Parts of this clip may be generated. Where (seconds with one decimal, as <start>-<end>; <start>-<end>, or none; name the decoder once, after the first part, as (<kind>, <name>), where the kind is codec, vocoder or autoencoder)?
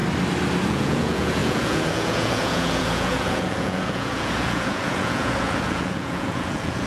0.7-6.9 (vocoder, Vocos)